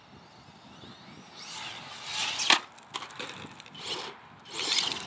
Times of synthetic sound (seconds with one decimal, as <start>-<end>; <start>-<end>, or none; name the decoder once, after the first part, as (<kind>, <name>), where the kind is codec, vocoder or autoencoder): none